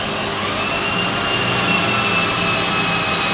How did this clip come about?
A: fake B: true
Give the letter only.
B